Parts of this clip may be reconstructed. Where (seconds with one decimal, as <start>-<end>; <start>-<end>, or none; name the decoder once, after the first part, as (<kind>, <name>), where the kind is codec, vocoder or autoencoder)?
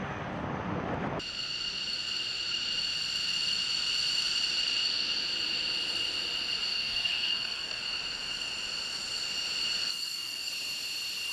6.7-7.8 (codec, SNAC); 9.9-10.5